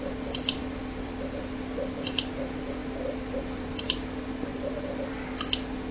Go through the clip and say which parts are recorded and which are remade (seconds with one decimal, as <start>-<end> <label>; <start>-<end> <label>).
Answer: 0.0-0.6 recorded; 0.6-1.4 remade; 1.4-2.8 recorded; 2.8-3.8 remade; 3.8-4.5 recorded; 4.5-5.3 remade; 5.3-5.9 recorded